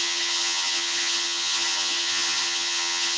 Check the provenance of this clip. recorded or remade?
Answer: remade